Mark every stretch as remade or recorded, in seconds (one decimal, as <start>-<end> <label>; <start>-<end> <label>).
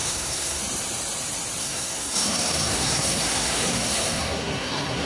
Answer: 0.0-0.6 remade; 0.6-1.6 recorded; 1.6-5.1 remade